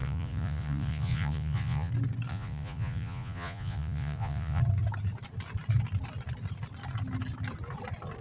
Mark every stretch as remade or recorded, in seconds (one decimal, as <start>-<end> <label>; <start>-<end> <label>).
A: 0.0-1.9 remade; 1.9-2.3 recorded; 2.3-4.6 remade; 4.6-8.2 recorded